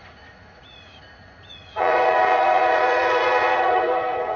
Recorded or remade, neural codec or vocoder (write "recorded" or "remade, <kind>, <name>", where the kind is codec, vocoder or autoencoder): remade, vocoder, Vocos